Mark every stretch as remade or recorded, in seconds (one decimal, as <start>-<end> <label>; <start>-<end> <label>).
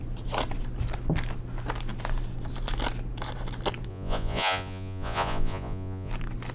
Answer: 0.0-3.9 recorded; 3.9-6.1 remade; 6.1-6.5 recorded